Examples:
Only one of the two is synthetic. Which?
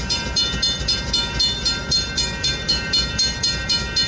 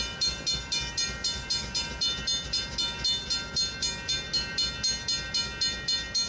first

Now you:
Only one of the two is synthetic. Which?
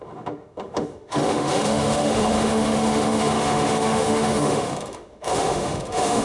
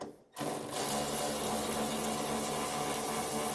first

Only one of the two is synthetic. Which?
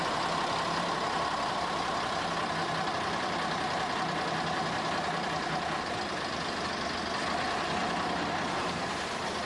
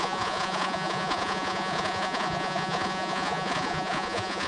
second